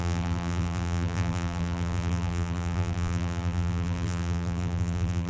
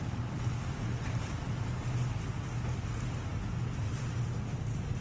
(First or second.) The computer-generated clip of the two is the first